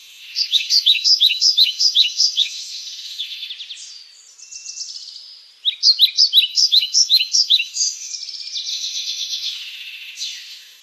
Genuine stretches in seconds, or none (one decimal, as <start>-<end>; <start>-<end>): 3.5-6.5; 8.1-8.7